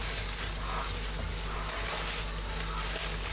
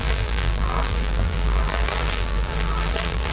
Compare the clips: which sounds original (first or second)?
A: first